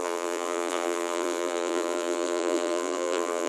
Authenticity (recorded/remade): remade